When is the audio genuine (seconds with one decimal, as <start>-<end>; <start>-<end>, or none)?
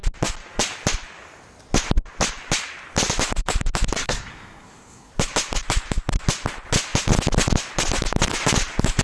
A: 0.0-4.0; 5.1-9.0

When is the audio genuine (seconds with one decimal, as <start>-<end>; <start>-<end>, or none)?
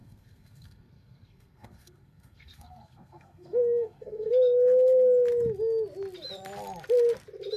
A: 4.3-7.6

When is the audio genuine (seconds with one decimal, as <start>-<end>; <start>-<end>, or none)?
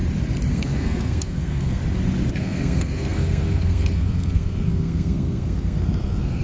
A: 0.0-0.5; 1.8-2.3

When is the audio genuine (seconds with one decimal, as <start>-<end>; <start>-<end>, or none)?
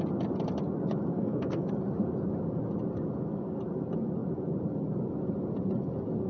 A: 0.0-1.1; 1.7-6.3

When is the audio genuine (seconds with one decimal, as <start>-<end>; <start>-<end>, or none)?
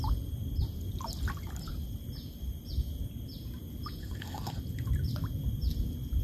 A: 0.0-4.0; 4.6-6.2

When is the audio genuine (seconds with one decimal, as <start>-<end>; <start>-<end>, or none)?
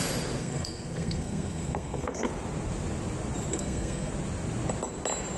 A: 0.0-0.4; 2.3-3.5; 4.1-5.4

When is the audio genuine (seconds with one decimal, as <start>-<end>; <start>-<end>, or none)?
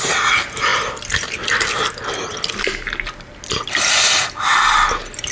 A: 0.0-5.3